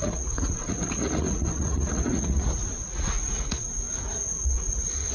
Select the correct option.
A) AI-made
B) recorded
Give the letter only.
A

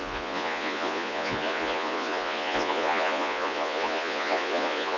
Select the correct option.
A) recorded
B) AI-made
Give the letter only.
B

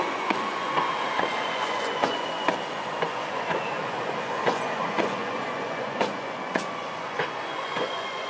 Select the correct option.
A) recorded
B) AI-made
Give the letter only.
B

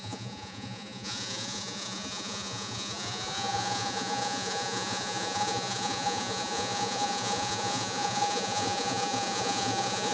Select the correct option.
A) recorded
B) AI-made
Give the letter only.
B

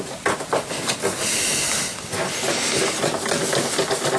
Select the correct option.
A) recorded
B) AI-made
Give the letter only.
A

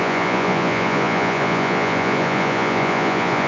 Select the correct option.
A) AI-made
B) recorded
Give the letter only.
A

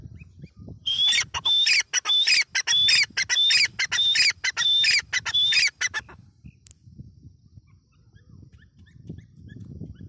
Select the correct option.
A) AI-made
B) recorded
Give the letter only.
B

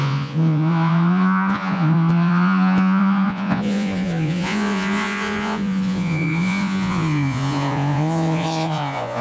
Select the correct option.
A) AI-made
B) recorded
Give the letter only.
A